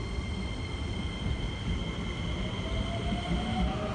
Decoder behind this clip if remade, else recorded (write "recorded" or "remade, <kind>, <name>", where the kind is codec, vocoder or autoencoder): recorded